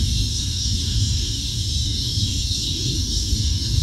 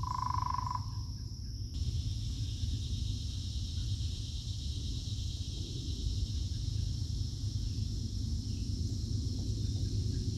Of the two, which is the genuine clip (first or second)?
second